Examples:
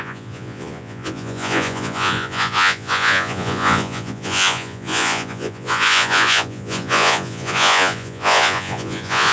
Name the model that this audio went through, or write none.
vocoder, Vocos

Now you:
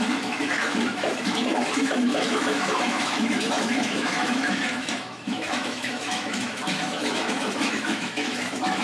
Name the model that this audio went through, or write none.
autoencoder, DAC-VAE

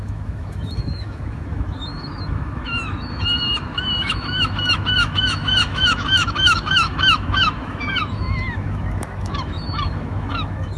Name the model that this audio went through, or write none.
autoencoder, DAC-VAE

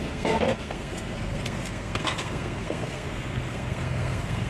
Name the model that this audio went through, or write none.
codec, SNAC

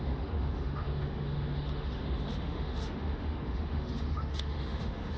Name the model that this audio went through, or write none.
autoencoder, DAC-VAE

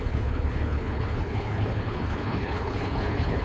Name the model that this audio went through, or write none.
codec, HILCodec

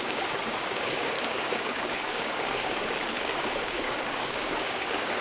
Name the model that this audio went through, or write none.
codec, DAC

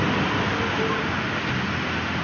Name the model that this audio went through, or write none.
none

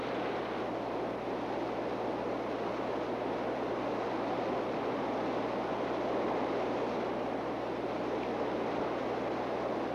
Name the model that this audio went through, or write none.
none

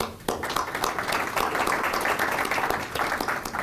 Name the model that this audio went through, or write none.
none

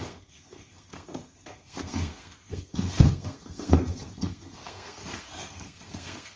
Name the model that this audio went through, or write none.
codec, SNAC